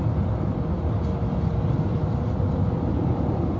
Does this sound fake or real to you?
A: real